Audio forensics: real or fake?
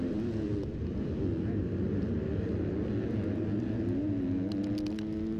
real